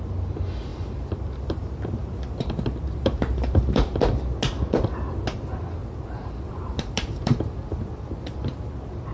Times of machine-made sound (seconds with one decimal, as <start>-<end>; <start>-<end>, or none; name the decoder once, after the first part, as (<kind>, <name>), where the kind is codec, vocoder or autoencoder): 0.7-4.0 (vocoder, BigVGAN v2); 5.8-7.9